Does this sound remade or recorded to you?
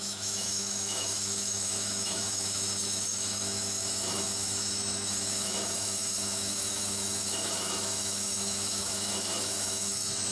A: remade